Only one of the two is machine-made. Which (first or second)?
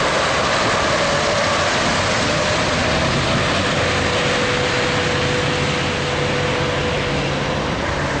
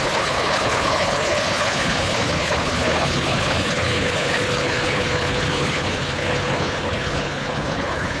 second